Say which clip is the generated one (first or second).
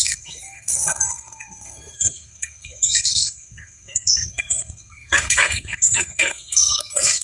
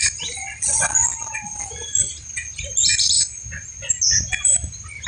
first